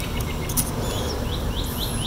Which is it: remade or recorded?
recorded